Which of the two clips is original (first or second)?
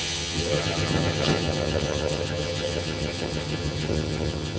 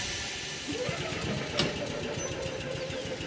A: second